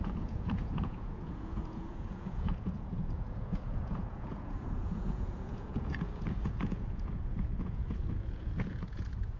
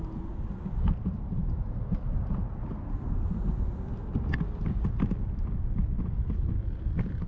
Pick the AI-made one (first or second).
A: first